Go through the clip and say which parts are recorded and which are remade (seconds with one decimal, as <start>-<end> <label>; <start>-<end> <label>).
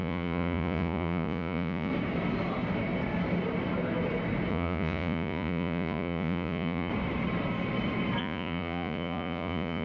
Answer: 0.0-1.9 remade; 1.9-4.5 recorded; 4.5-6.9 remade; 6.9-8.2 recorded; 8.2-9.8 remade